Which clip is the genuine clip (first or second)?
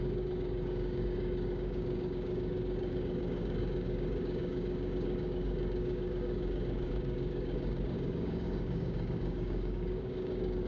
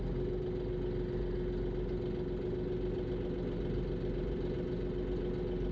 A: second